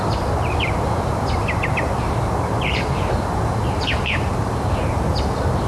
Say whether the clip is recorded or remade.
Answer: remade